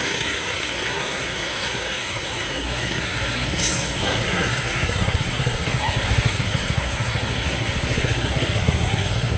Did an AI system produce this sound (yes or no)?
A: yes